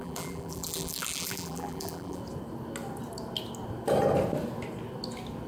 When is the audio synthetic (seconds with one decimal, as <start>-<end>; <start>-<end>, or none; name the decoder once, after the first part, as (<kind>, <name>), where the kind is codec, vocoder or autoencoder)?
0.0-2.2 (vocoder, BigVGAN v2)